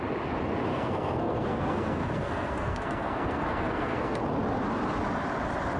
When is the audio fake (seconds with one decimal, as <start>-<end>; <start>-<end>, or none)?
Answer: 0.7-4.2